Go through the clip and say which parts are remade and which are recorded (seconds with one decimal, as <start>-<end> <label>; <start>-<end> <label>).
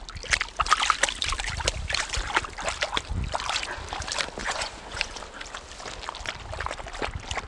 0.0-4.4 recorded; 4.4-5.2 remade; 5.2-7.5 recorded